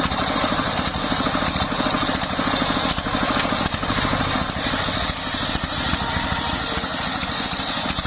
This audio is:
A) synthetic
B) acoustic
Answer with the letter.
B